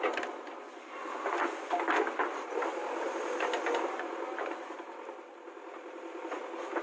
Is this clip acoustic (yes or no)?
yes